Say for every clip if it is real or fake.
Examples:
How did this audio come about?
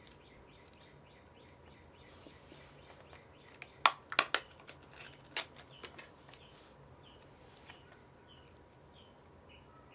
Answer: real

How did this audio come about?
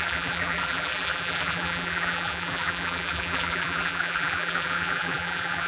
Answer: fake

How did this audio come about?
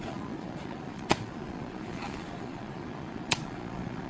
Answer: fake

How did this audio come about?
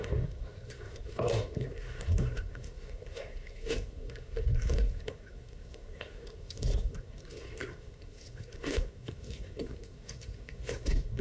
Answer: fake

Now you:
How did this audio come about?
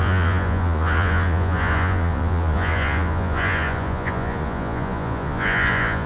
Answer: fake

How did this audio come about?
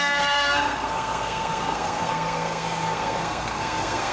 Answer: fake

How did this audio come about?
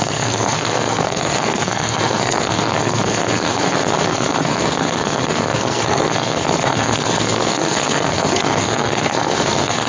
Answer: fake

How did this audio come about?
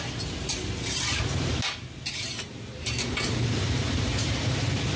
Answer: fake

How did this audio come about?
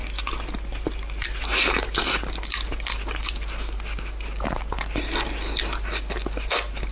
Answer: real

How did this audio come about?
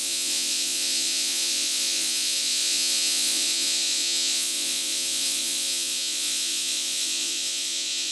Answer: fake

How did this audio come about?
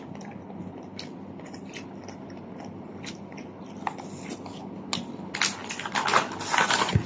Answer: real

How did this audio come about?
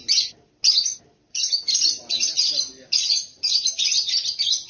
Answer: real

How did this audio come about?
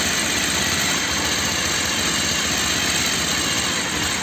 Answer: real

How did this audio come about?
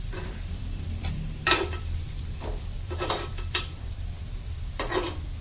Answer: fake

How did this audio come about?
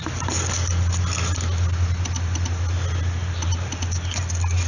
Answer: real